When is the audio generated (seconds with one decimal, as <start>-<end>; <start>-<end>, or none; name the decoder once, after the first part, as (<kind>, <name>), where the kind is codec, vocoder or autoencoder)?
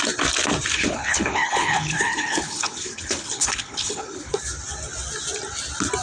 0.7-4.3 (codec, HILCodec)